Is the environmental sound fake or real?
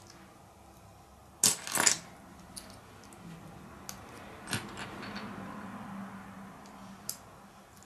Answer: real